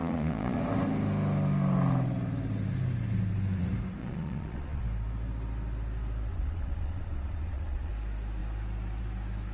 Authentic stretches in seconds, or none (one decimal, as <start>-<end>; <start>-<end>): 0.6-4.0; 4.8-6.3; 7.9-9.5